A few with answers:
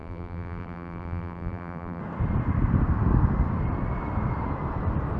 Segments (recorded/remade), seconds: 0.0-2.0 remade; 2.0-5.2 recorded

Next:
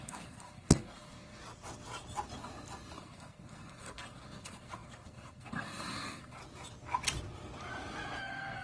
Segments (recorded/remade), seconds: 0.0-1.4 remade; 1.4-3.0 recorded; 3.0-6.4 remade; 6.4-8.2 recorded; 8.2-8.6 remade

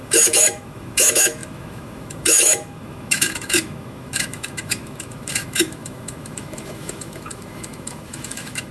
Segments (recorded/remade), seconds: 0.0-8.7 remade

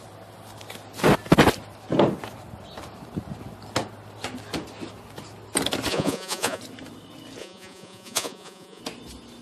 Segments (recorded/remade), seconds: 0.0-5.9 recorded; 5.9-6.6 remade; 6.6-7.4 recorded; 7.4-8.8 remade; 8.8-9.4 recorded

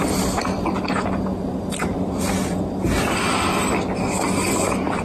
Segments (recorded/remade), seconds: 0.0-1.3 recorded; 1.3-2.6 remade; 2.6-5.0 recorded

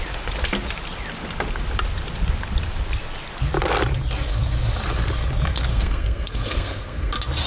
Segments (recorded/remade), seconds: 0.0-5.7 recorded; 5.7-7.1 remade; 7.1-7.5 recorded

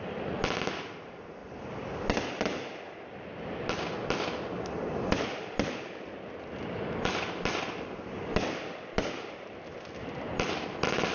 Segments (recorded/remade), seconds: 0.0-11.1 recorded